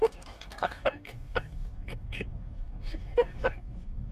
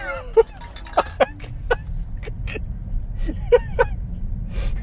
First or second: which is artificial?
first